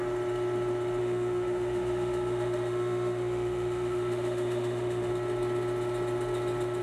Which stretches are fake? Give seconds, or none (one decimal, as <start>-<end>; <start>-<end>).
1.0-5.1